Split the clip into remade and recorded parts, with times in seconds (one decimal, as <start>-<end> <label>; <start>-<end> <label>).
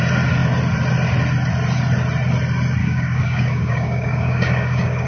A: 0.0-2.8 recorded; 2.8-5.1 remade